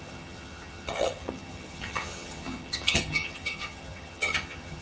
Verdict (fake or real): fake